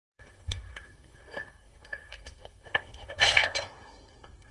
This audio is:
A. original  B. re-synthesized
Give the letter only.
B